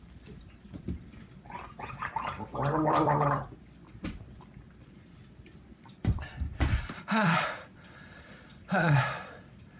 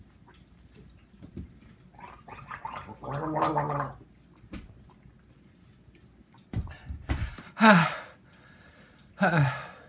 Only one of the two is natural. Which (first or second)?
second